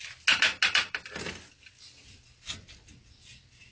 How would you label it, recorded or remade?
recorded